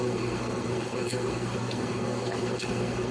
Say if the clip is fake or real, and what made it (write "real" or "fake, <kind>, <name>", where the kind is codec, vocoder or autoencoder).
fake, codec, SNAC